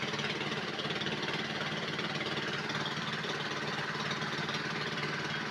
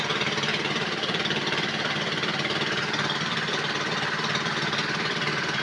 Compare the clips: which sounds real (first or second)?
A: first